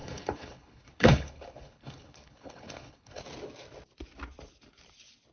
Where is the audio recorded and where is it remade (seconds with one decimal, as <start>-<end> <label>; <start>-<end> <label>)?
0.0-3.2 remade; 3.2-5.3 recorded